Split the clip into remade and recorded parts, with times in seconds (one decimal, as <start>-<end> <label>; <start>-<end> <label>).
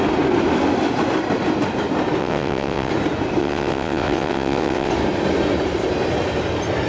0.0-2.2 recorded; 2.2-2.9 remade; 2.9-3.4 recorded; 3.4-4.9 remade; 4.9-6.9 recorded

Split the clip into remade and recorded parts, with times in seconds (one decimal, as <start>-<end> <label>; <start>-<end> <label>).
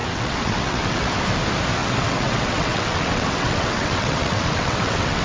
0.0-1.1 remade; 1.1-1.8 recorded; 1.8-5.2 remade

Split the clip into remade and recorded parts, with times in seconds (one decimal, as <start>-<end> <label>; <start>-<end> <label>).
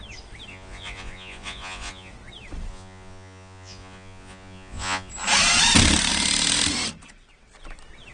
0.0-0.5 recorded; 0.5-2.1 remade; 2.1-2.7 recorded; 2.7-5.1 remade; 5.1-8.1 recorded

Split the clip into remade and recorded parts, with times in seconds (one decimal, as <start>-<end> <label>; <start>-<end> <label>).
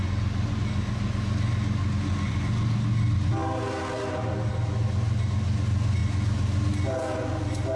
0.0-7.8 recorded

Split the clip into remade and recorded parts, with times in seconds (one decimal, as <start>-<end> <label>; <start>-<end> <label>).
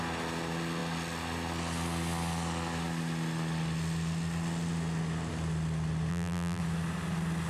0.0-6.1 recorded; 6.1-6.6 remade; 6.6-7.5 recorded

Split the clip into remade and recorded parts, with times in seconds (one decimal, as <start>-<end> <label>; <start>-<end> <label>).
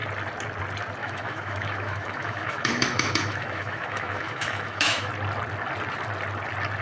0.0-1.0 recorded; 1.0-5.1 remade; 5.1-6.8 recorded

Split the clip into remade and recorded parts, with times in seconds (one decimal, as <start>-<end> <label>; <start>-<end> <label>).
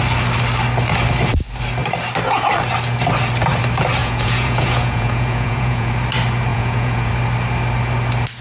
0.0-4.0 recorded; 4.0-5.9 remade; 5.9-6.5 recorded; 6.5-7.1 remade; 7.1-8.4 recorded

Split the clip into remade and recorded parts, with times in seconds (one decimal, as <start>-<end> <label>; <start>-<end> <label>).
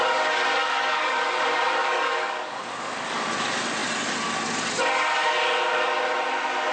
0.0-0.6 recorded; 0.6-1.4 remade; 1.4-1.8 recorded; 1.8-3.3 remade; 3.3-6.7 recorded